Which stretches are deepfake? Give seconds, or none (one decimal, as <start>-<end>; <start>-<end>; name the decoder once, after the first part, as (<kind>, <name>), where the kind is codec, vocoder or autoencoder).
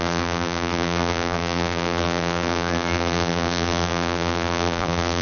0.0-5.2 (vocoder, BigVGAN v2)